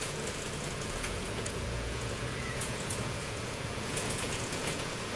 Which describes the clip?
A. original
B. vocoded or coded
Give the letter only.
B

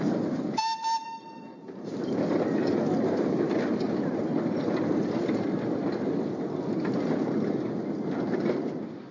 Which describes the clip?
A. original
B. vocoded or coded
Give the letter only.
A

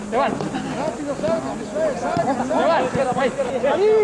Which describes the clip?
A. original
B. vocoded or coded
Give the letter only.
A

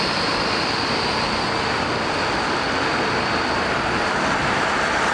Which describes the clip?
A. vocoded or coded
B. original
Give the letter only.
B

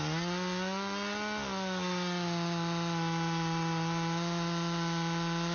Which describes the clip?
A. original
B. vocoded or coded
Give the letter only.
A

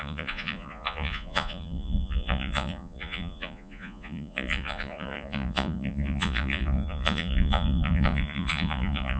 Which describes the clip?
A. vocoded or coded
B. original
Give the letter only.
A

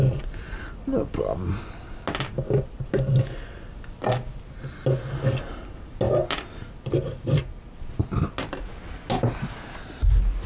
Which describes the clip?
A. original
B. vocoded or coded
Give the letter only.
A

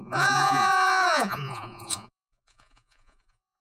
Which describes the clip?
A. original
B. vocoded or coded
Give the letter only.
B